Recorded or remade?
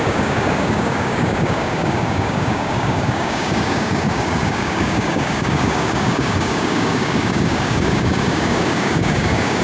remade